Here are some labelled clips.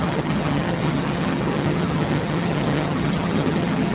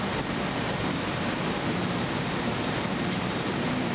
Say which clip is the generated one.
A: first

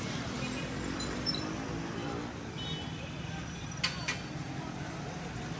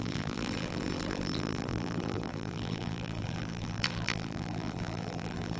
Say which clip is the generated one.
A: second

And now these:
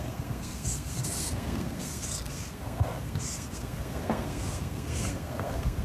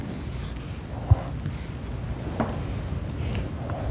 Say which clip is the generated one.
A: first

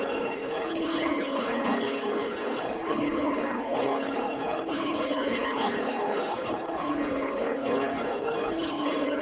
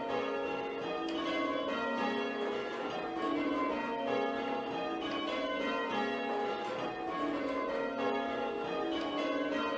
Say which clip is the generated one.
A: first